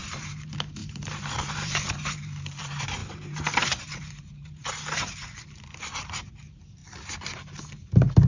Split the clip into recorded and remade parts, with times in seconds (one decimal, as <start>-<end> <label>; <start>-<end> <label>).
0.0-6.8 remade; 6.8-8.3 recorded